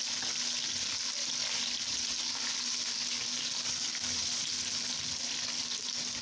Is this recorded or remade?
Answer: recorded